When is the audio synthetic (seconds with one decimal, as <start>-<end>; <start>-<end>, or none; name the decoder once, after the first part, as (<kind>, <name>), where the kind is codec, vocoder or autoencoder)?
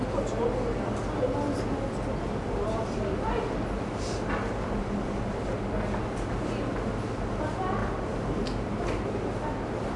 7.8-9.0 (vocoder, BigVGAN v2)